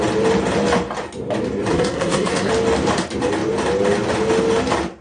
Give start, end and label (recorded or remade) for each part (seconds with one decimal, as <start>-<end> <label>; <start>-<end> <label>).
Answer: 0.0-1.7 recorded; 1.7-2.5 remade; 2.5-5.0 recorded